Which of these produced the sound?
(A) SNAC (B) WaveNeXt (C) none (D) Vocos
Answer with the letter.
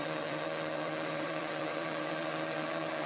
B